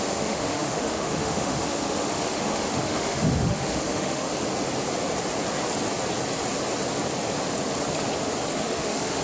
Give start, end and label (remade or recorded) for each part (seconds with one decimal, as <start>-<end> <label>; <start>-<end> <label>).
0.0-4.3 remade; 4.3-8.5 recorded; 8.5-9.2 remade